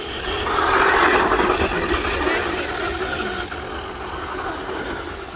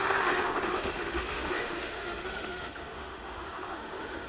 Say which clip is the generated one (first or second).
second